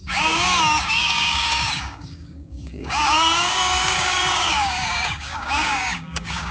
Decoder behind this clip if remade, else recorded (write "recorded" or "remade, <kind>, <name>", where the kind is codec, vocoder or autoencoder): remade, codec, DAC